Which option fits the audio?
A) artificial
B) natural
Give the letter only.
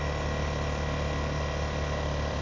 B